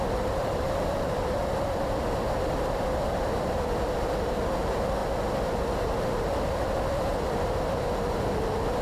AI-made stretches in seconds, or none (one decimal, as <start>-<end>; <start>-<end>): none